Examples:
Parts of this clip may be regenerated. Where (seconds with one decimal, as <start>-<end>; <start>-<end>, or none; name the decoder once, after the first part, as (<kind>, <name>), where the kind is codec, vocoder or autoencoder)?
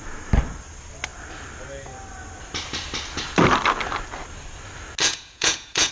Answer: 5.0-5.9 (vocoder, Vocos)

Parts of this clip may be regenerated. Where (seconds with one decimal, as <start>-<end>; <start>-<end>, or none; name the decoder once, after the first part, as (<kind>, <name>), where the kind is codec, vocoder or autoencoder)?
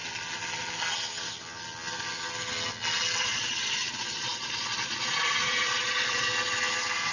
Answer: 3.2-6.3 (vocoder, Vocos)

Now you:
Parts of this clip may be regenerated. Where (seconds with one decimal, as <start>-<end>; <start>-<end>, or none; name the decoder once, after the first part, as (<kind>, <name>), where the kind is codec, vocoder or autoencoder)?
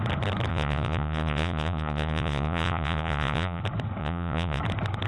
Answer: 0.5-3.6 (vocoder, Vocos); 4.0-4.6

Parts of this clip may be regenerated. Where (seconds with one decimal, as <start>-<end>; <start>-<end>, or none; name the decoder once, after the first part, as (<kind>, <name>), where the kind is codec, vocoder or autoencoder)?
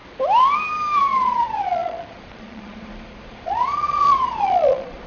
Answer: 1.0-5.1 (vocoder, Vocos)